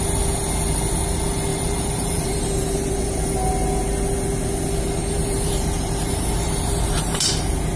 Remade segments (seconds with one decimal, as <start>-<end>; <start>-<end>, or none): 1.5-3.5; 5.0-7.3